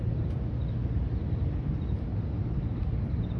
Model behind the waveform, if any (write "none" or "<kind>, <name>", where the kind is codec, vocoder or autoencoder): none